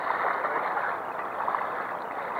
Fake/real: real